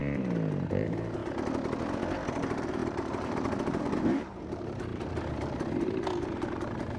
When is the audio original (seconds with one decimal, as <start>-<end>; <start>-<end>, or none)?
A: 0.0-0.7; 1.2-2.3; 4.9-6.3